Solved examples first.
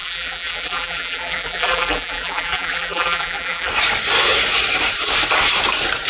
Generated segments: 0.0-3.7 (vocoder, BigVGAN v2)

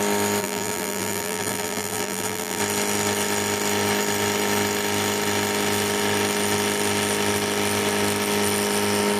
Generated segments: 0.4-2.6 (vocoder, BigVGAN v2)

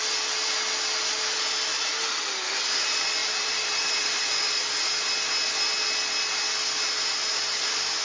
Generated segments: 3.2-4.2 (vocoder, BigVGAN v2)